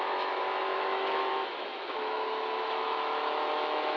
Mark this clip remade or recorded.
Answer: remade